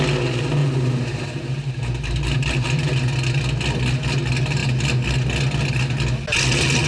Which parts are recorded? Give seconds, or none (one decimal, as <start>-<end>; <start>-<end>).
0.0-0.6; 3.0-6.9